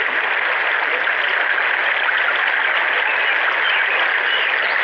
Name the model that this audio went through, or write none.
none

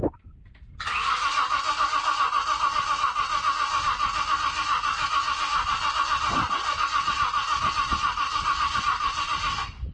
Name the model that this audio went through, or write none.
none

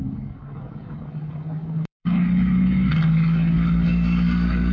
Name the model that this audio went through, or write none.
codec, DAC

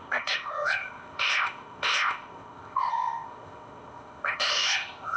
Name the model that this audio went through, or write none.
codec, ZipCodec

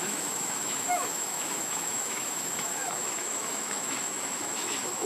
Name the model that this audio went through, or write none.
autoencoder, DAC-VAE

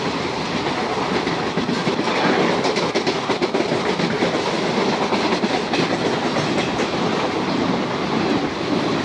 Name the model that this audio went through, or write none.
none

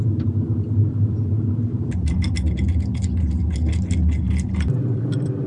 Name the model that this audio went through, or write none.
none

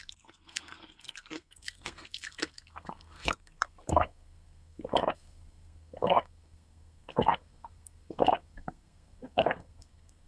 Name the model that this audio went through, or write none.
codec, SNAC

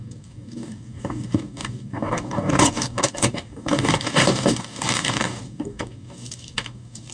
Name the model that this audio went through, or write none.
codec, DAC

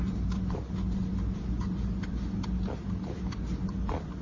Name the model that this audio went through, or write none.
none